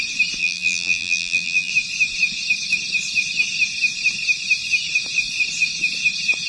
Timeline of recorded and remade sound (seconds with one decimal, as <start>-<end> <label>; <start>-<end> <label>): 0.0-0.4 recorded; 0.4-1.7 remade; 1.7-6.5 recorded